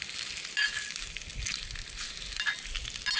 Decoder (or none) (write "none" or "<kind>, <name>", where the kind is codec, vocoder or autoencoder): none